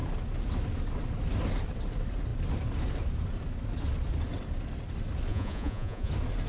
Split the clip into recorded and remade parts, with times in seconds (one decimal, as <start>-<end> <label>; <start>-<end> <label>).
0.0-5.3 recorded; 5.3-6.1 remade; 6.1-6.5 recorded